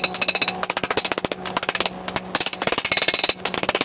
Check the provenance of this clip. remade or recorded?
recorded